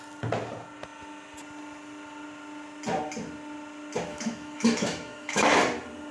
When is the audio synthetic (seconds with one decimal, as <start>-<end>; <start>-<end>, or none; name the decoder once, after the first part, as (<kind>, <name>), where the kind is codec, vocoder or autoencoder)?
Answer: 4.1-5.5 (autoencoder, DAC-VAE)